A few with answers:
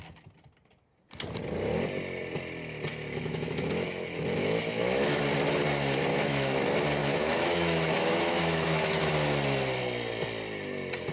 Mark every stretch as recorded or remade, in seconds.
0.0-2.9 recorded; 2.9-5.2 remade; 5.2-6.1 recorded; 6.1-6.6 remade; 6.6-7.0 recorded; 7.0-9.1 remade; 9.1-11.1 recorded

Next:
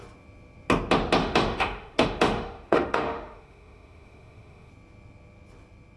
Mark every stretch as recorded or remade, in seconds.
0.0-1.2 recorded; 1.2-4.7 remade; 4.7-6.0 recorded

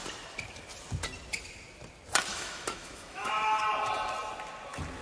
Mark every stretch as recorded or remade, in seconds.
0.0-2.3 recorded; 2.3-3.6 remade; 3.6-5.0 recorded

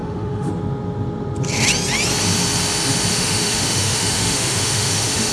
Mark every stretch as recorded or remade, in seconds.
0.0-0.5 remade; 0.5-3.1 recorded; 3.1-5.3 remade

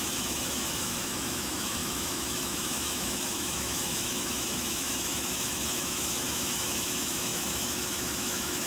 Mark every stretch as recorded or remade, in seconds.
0.0-8.7 remade

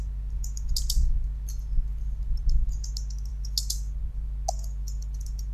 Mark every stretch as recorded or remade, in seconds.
0.0-5.5 recorded

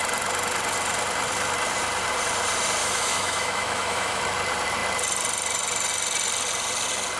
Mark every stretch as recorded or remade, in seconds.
0.0-2.8 recorded; 2.8-4.2 remade; 4.2-7.2 recorded